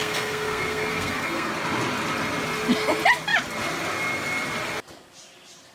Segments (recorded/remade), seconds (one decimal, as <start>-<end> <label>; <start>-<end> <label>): 0.0-1.5 remade; 1.5-5.7 recorded